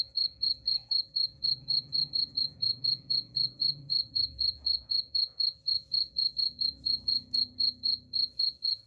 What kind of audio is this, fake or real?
fake